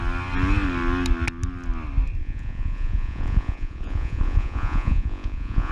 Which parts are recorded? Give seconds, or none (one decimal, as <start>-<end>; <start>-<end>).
0.0-2.2